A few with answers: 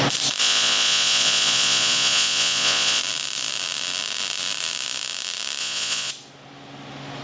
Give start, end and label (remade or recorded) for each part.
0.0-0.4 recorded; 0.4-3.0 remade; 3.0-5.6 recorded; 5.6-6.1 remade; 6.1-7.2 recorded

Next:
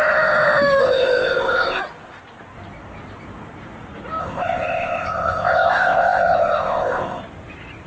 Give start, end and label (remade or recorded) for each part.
0.0-0.8 recorded; 0.8-1.8 remade; 1.8-4.2 recorded; 4.2-7.2 remade; 7.2-7.9 recorded

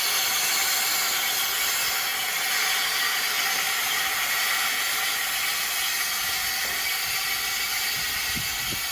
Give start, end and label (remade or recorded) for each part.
0.0-8.9 recorded